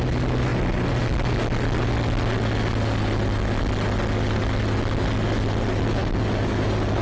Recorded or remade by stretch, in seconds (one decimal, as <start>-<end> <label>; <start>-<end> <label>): 0.0-7.0 recorded